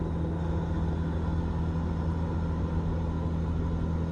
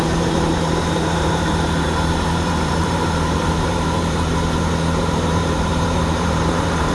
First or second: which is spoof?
second